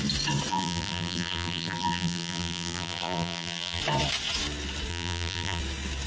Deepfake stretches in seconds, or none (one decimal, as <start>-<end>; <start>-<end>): 0.5-3.8; 4.9-5.6